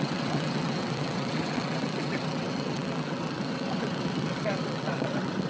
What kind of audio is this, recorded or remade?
remade